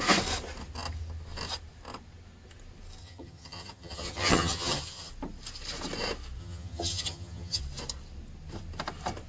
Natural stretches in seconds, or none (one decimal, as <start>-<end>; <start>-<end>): 0.0-3.0; 5.1-6.4; 7.6-9.3